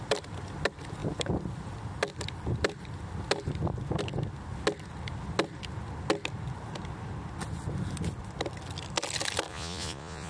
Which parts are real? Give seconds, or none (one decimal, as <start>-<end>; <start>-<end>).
0.0-9.5